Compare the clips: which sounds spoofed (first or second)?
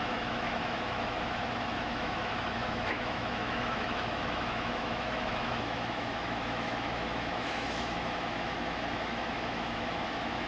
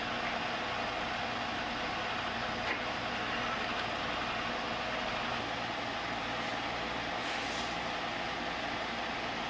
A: first